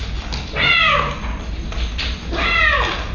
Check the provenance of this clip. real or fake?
real